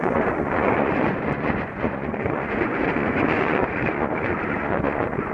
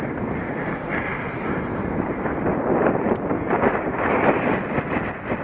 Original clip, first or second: second